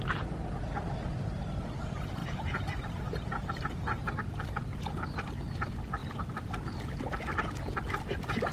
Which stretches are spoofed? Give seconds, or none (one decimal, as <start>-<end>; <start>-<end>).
2.2-5.2